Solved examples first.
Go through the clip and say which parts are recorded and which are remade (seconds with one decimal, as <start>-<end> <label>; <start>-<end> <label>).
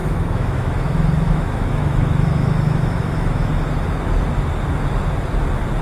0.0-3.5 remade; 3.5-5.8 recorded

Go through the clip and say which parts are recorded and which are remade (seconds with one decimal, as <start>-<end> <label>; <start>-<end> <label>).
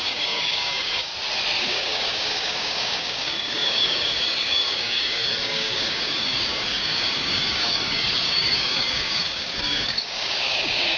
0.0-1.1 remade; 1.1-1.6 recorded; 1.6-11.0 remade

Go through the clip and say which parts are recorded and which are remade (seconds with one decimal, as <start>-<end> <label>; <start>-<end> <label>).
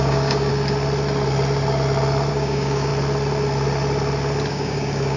0.0-0.5 remade; 0.5-2.3 recorded; 2.3-2.9 remade; 2.9-4.5 recorded; 4.5-5.2 remade